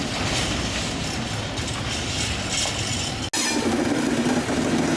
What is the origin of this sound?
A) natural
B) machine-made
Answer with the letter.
A